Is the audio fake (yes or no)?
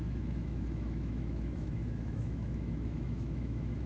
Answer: yes